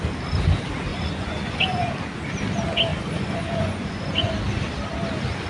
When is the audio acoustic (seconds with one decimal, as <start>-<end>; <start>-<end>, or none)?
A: 0.0-0.9; 1.9-2.9; 4.3-5.5